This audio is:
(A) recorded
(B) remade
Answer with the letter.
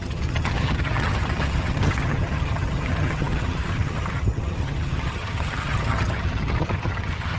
B